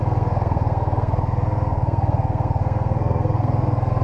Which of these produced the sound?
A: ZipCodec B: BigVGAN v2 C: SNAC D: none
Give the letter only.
C